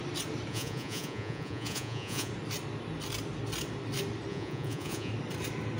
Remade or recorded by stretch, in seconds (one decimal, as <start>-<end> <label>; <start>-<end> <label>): 0.0-0.5 recorded; 0.5-2.3 remade; 2.3-4.3 recorded; 4.3-5.1 remade; 5.1-5.8 recorded